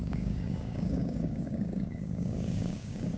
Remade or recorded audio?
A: remade